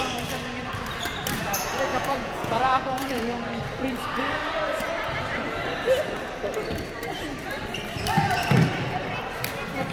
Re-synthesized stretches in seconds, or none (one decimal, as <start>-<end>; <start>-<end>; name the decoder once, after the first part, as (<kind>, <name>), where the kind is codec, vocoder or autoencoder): 1.9-3.2 (vocoder, Vocos)